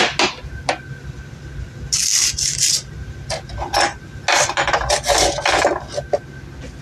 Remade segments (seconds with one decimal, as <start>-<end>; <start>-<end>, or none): none